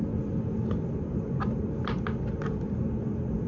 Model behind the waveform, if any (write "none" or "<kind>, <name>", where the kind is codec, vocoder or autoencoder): none